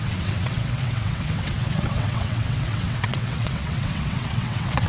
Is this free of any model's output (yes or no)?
no